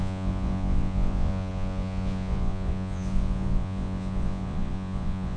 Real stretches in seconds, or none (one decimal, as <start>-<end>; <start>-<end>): none